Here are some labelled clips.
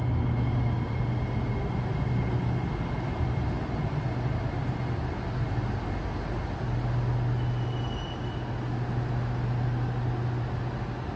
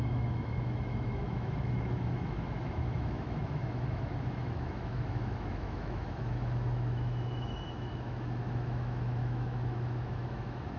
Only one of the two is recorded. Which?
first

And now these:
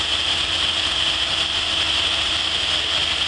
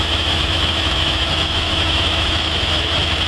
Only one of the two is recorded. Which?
first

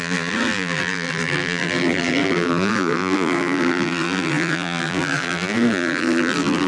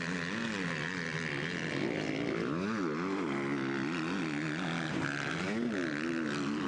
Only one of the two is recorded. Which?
second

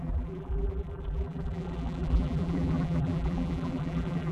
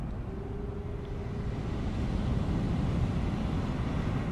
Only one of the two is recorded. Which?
second